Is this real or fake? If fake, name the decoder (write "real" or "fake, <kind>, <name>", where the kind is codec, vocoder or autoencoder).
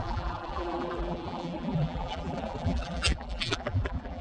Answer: fake, vocoder, BigVGAN v2